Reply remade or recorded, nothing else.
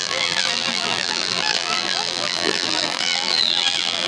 remade